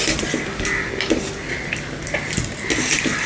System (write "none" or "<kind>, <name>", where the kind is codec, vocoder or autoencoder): none